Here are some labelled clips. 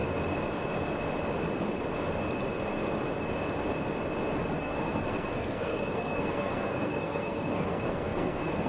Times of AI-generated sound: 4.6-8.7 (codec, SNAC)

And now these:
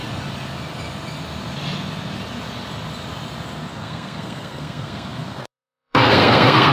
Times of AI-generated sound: 3.7-6.7 (codec, SNAC)

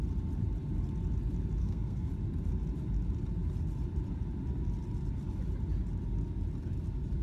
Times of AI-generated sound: 1.6-2.1 (codec, SNAC)